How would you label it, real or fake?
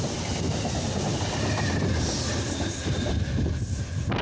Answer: real